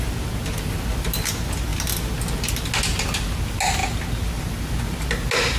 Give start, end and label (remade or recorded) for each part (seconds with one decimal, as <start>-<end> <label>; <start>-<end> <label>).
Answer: 0.0-5.6 recorded